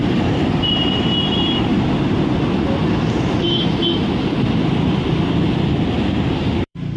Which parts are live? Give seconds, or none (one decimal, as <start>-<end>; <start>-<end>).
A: 1.7-5.9